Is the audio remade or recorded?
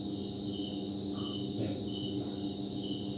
recorded